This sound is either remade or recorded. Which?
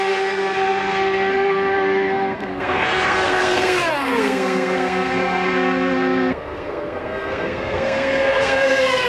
remade